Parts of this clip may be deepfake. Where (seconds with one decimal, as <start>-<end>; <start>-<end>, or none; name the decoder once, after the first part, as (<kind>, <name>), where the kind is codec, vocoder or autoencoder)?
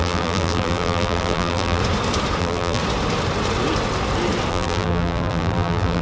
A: 0.0-1.8 (vocoder, BigVGAN v2); 2.4-2.8; 4.5-6.0